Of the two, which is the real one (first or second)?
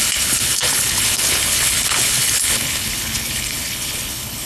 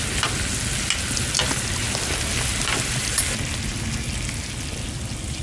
second